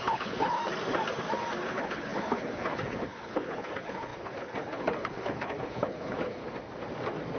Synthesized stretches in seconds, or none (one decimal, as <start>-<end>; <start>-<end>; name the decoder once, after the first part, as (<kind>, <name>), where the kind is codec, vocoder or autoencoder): 0.0-0.6 (codec, HILCodec); 1.7-6.4

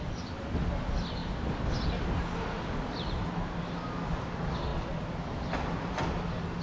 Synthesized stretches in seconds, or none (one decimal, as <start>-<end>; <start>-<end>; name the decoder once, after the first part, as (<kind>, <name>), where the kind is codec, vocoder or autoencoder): none

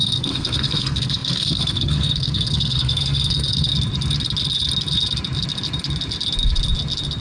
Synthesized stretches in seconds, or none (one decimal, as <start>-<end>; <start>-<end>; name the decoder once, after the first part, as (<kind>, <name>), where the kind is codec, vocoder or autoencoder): 0.0-3.7 (codec, SNAC)

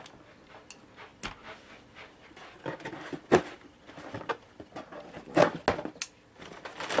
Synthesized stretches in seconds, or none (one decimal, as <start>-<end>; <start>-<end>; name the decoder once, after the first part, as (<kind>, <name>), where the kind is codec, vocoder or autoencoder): none

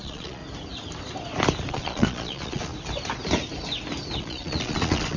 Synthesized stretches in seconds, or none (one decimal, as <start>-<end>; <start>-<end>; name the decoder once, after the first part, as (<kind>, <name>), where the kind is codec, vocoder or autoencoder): 0.0-0.4 (vocoder, Vocos); 1.7-2.7; 4.2-5.2

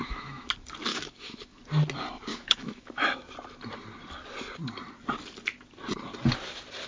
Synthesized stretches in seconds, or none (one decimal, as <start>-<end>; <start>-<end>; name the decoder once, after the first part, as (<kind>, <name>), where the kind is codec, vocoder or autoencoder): 0.0-0.5 (autoencoder, DAC-VAE); 0.9-1.6; 2.3-3.3